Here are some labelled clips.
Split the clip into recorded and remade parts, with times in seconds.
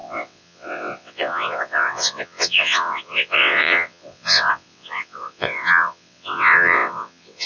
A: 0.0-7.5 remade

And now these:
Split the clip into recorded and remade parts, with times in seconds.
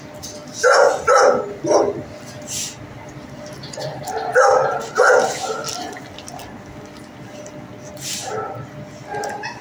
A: 0.0-9.6 recorded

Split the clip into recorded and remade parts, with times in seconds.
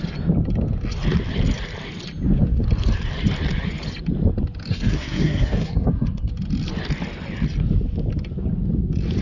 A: 0.0-4.7 recorded; 4.7-6.3 remade; 6.3-9.2 recorded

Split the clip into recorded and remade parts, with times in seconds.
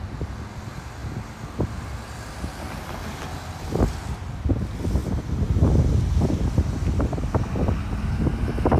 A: 0.0-8.8 recorded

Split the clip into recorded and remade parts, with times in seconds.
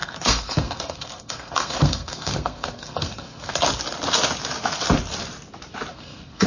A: 0.0-3.5 remade; 3.5-5.9 recorded; 5.9-6.5 remade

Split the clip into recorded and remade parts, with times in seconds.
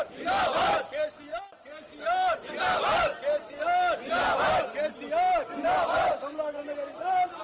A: 0.0-7.4 recorded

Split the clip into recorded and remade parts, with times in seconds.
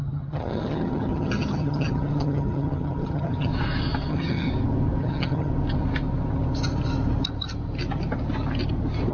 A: 0.0-3.5 remade; 3.5-4.1 recorded; 4.1-4.5 remade; 4.5-5.0 recorded; 5.0-5.5 remade; 5.5-9.1 recorded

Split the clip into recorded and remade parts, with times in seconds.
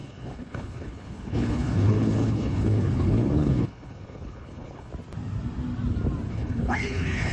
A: 0.0-4.9 remade; 4.9-6.3 recorded; 6.3-7.3 remade